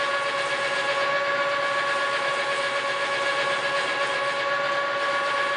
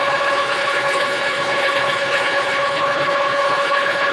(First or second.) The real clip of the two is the first